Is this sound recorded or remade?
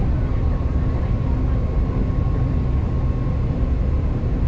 recorded